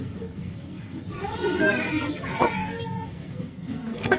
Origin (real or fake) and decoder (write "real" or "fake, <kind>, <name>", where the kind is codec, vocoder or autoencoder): fake, codec, SNAC